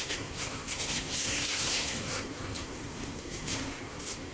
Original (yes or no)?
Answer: no